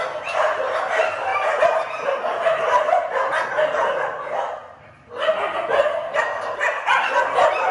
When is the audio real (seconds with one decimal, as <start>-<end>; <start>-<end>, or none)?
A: 0.0-7.7